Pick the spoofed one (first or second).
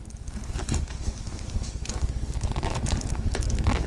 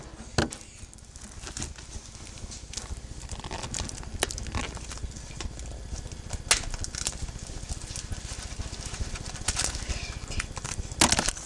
first